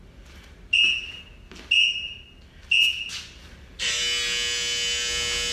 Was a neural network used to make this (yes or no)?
no